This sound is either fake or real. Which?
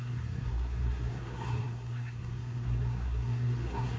fake